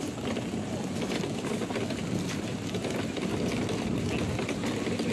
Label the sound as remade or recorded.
recorded